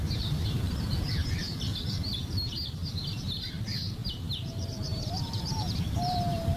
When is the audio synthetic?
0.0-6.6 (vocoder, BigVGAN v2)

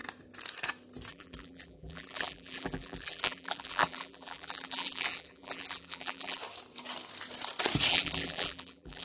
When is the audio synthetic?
1.1-6.4 (vocoder, BigVGAN v2); 7.9-9.0

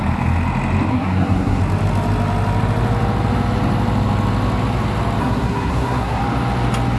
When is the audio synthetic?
0.9-1.6 (codec, SNAC); 5.2-6.2

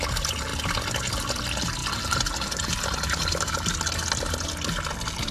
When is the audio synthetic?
1.8-3.5 (vocoder, BigVGAN v2)

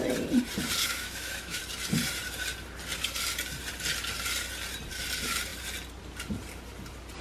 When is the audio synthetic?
0.8-1.6 (autoencoder, DAC-VAE)

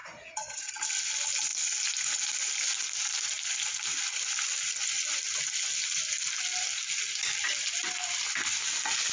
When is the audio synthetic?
0.0-0.7 (vocoder, Vocos)

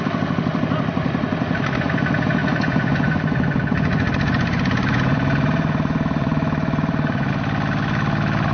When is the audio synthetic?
2.4-7.3 (vocoder, Vocos)